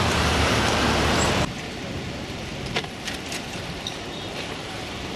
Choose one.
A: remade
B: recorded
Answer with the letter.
A